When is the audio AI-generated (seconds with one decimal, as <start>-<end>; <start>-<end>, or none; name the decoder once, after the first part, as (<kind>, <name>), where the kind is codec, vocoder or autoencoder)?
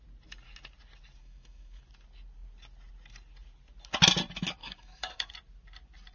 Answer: 1.2-1.8 (codec, DAC); 4.6-5.3